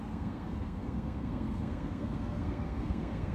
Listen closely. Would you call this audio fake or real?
fake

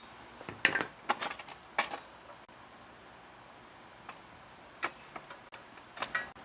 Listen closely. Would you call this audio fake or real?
real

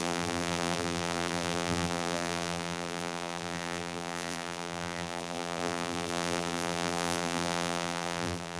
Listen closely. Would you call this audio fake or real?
fake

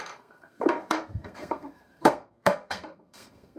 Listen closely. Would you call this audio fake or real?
fake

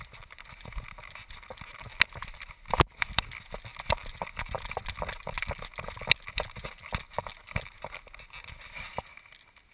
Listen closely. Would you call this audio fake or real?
real